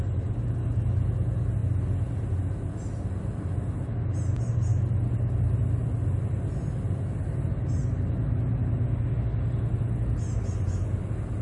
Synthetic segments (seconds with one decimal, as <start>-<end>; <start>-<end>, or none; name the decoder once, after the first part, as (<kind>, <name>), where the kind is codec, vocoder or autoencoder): none